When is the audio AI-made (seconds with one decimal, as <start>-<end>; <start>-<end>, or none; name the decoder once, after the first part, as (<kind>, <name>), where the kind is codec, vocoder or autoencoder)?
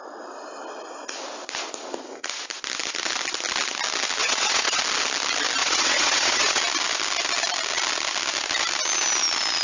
4.2-4.8 (vocoder, WaveNeXt); 5.6-6.6